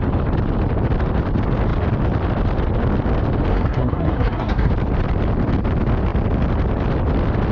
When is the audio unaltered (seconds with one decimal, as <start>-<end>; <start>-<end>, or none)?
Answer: 0.0-3.5; 4.7-7.5